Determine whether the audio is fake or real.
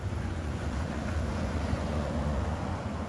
fake